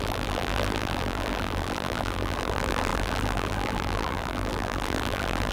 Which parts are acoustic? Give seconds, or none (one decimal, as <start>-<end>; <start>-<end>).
none